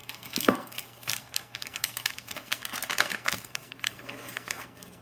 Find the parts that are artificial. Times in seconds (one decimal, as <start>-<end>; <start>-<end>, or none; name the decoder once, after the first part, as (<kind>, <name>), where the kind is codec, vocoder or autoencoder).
0.0-5.0 (codec, SNAC)